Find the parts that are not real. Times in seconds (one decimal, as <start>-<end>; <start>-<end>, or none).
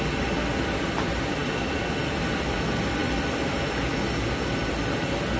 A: none